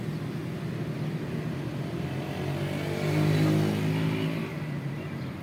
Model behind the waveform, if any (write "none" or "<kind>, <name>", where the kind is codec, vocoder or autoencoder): none